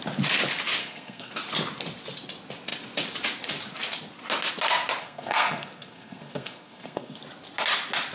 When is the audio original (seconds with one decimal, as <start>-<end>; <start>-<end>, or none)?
0.0-0.8; 1.3-5.0; 7.2-8.1